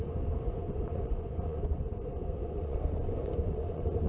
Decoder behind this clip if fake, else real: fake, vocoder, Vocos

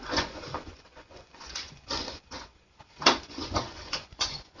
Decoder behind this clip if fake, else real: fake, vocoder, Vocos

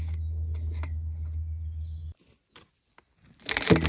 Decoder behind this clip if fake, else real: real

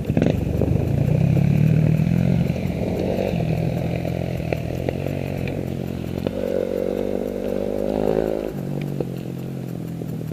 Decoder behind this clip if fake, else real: fake, vocoder, BigVGAN v2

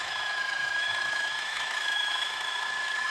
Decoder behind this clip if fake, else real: fake, autoencoder, DAC-VAE